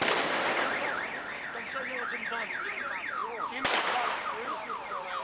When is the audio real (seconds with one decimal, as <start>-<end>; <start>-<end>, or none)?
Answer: 0.0-2.1; 2.8-5.2